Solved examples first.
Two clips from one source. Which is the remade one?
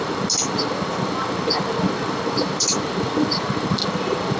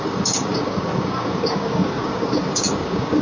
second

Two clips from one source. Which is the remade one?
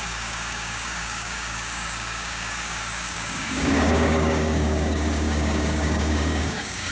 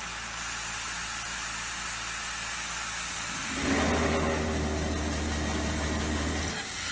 first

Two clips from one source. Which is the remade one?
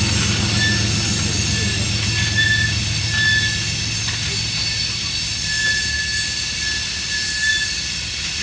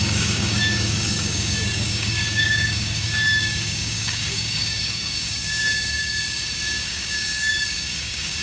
second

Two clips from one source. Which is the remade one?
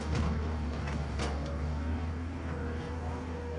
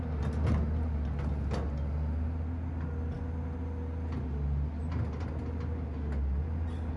first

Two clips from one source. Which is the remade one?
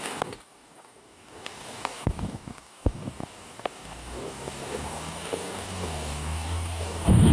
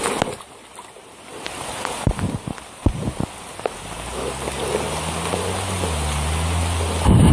first